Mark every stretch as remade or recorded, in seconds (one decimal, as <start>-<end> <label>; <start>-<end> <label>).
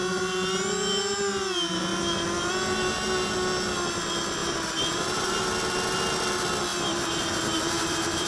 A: 0.0-4.4 recorded; 4.4-5.4 remade; 5.4-6.7 recorded; 6.7-8.3 remade